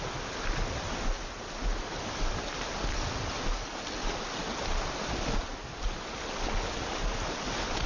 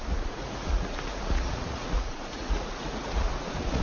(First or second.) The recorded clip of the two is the first